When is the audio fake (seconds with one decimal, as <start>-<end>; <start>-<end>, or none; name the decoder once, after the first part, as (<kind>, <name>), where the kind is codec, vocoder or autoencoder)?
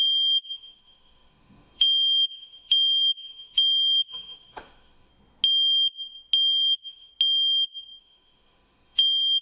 0.0-5.1 (autoencoder, DAC-VAE); 6.5-7.1; 8.0-9.4